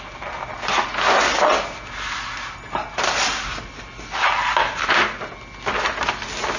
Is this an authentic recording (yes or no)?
yes